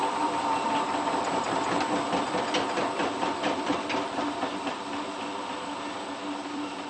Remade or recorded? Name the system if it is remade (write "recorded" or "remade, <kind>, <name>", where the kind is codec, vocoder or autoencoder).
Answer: remade, vocoder, BigVGAN v2